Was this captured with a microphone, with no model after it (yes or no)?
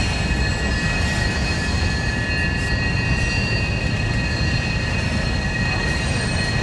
yes